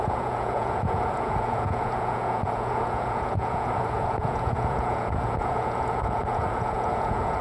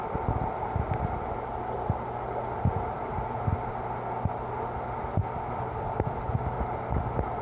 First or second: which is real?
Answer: second